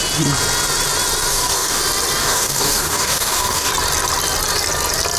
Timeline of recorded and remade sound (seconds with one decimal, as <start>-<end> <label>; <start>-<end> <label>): 0.0-1.3 recorded; 1.3-1.8 remade; 1.8-2.2 recorded; 2.2-3.7 remade; 3.7-5.2 recorded